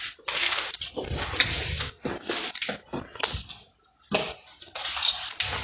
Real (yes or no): yes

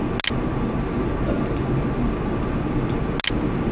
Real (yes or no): yes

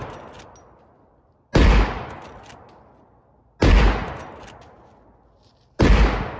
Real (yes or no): yes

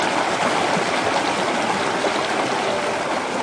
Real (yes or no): yes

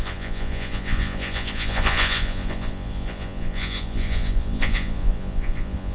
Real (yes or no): no